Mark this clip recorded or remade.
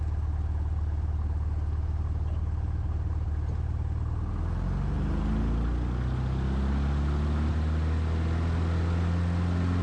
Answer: recorded